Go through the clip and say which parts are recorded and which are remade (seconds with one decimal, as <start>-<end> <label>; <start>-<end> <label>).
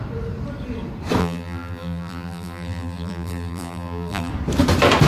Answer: 0.0-1.2 recorded; 1.2-4.3 remade; 4.3-5.1 recorded